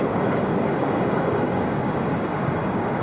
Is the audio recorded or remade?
remade